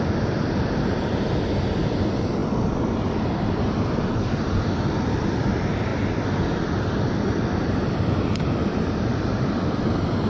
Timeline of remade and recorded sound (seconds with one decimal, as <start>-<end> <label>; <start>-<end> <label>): 0.0-5.9 remade; 5.9-8.2 recorded; 8.2-10.3 remade